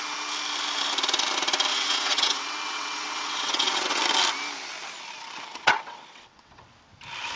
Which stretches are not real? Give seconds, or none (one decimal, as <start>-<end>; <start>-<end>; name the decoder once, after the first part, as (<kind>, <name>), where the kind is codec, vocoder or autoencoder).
1.7-4.0 (vocoder, WaveNeXt); 5.5-6.7